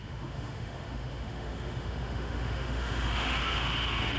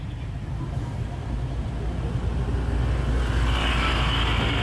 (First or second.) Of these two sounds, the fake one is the first